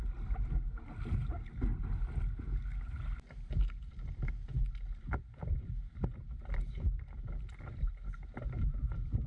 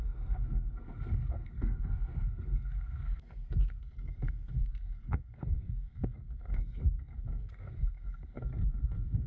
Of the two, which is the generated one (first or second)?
second